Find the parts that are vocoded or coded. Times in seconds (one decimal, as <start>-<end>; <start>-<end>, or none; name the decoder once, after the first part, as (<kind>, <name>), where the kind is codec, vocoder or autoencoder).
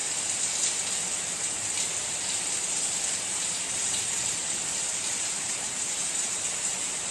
3.3-7.1 (vocoder, BigVGAN v2)